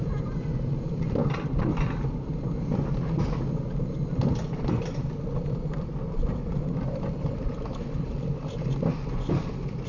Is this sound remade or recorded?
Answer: recorded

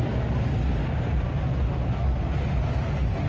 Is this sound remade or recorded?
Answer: recorded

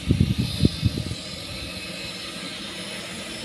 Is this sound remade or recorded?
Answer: recorded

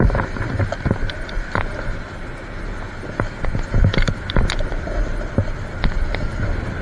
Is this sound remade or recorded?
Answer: recorded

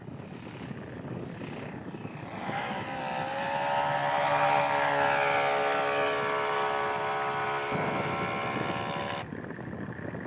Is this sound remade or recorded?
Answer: recorded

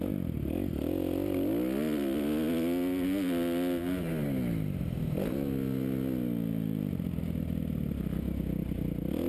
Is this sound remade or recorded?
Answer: recorded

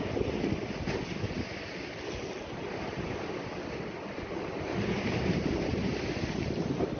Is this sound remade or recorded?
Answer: recorded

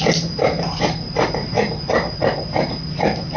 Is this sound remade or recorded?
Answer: remade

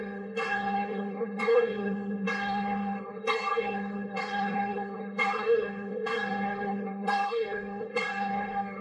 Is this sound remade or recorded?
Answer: remade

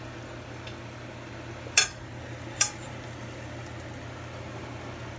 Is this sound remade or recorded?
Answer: recorded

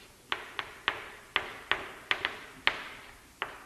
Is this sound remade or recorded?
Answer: recorded